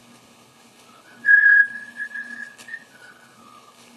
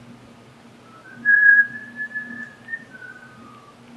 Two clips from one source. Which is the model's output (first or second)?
first